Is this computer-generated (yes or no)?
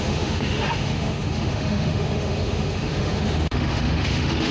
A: yes